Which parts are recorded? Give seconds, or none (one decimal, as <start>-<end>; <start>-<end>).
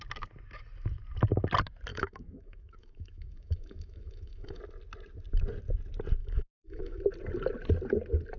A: 0.0-1.9; 4.6-6.2; 7.0-8.4